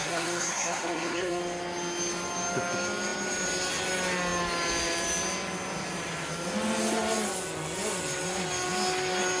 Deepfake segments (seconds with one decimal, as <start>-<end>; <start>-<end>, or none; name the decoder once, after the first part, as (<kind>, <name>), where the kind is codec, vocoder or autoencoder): 0.0-1.4 (codec, SNAC)